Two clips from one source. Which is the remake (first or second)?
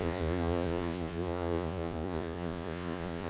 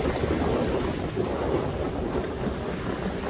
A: first